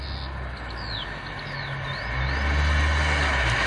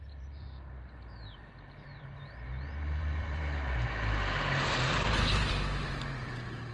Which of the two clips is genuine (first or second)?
first